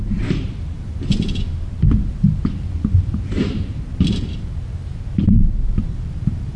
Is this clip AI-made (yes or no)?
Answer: yes